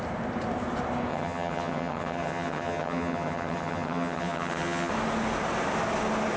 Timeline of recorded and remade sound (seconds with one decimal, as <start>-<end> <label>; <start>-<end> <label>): 0.0-1.1 recorded; 1.1-4.9 remade; 4.9-6.4 recorded